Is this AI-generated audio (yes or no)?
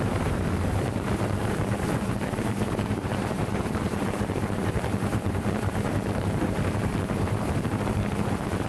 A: yes